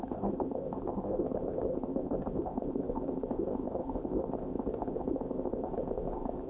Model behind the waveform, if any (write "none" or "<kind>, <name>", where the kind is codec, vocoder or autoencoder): codec, ZipCodec